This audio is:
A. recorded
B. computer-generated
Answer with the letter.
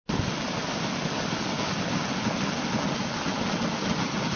A